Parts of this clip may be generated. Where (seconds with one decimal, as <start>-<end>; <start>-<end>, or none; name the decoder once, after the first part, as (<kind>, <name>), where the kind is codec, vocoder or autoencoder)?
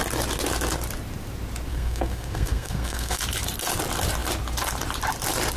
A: 1.7-3.2 (codec, SNAC)